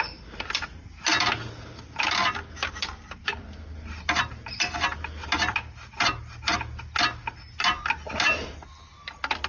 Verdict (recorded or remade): recorded